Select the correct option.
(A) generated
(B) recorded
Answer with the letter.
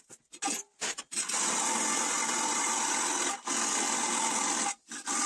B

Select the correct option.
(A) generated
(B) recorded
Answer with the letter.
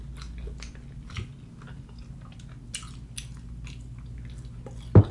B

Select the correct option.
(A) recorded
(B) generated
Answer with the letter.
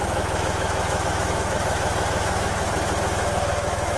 B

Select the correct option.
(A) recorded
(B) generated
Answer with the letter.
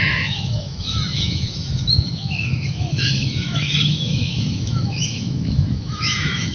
B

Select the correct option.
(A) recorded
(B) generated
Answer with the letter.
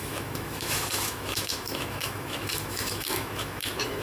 B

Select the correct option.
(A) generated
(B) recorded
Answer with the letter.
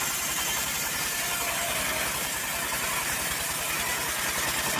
B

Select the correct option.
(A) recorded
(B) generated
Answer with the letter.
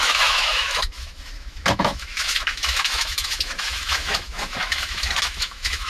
B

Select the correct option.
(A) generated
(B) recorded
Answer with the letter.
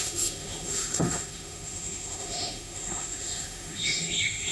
A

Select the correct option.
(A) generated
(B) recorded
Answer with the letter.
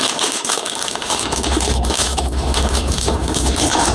A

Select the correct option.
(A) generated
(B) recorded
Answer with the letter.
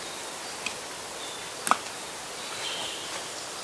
B